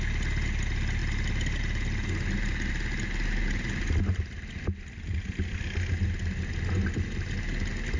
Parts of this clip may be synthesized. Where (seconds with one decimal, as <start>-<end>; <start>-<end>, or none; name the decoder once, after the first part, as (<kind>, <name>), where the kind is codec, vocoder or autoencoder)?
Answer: none